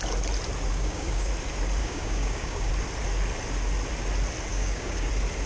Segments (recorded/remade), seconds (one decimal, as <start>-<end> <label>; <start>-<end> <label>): 0.0-0.7 recorded; 0.7-1.3 remade; 1.3-1.8 recorded; 1.8-2.7 remade; 2.7-4.5 recorded; 4.5-5.1 remade; 5.1-5.5 recorded